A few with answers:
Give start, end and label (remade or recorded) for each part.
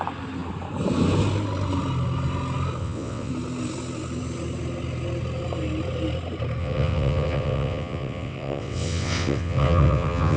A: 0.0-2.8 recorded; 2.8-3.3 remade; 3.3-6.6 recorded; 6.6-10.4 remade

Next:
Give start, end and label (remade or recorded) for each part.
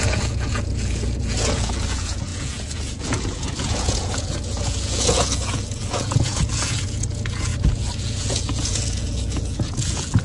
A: 0.0-10.2 remade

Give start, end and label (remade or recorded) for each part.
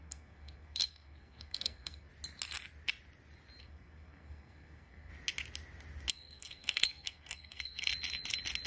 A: 0.0-2.1 remade; 2.1-3.6 recorded; 3.6-5.1 remade; 5.1-6.1 recorded; 6.1-7.9 remade; 7.9-8.7 recorded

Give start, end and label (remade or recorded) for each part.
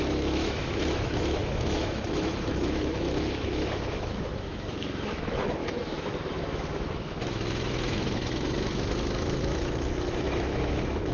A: 0.0-11.1 remade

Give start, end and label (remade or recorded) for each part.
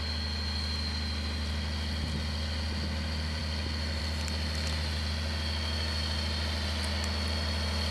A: 0.0-7.9 recorded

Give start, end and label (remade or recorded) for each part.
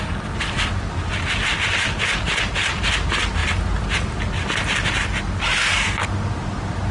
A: 0.0-3.4 remade; 3.4-4.1 recorded; 4.1-6.9 remade